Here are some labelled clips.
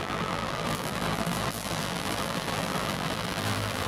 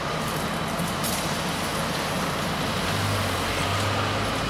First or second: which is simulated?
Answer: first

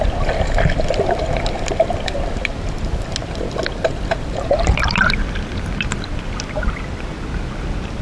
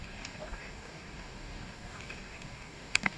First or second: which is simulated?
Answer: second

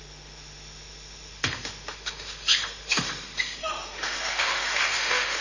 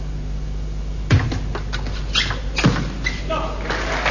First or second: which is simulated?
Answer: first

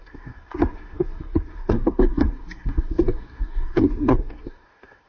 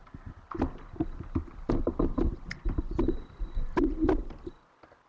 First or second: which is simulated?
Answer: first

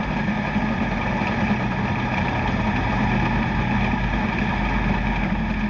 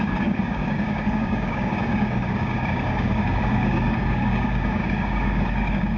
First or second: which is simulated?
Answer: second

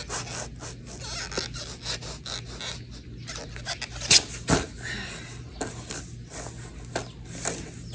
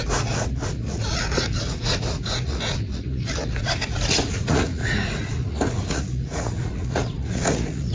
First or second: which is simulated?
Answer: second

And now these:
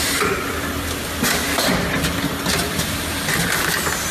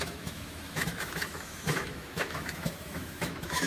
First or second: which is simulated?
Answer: second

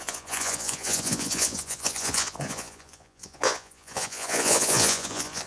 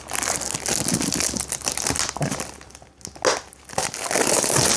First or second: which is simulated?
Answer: first